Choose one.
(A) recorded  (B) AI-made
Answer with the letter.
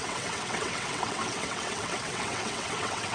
B